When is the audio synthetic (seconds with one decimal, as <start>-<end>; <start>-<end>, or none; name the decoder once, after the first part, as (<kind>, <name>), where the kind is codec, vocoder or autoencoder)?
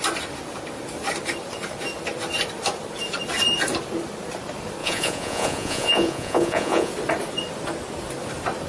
4.8-6.9 (vocoder, Vocos)